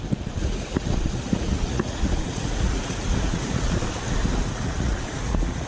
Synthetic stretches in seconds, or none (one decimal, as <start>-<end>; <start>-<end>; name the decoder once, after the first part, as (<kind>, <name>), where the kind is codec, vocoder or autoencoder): 0.4-3.8 (vocoder, Vocos); 4.2-5.7